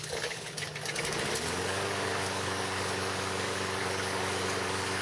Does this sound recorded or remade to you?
remade